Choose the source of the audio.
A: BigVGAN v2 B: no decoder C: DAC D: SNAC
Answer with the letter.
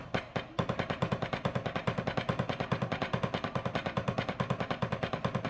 B